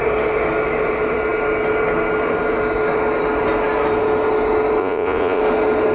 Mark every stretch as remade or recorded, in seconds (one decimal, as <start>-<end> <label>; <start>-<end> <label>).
0.0-4.8 recorded; 4.8-5.4 remade; 5.4-5.9 recorded